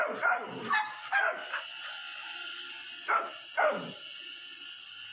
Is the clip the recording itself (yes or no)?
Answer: yes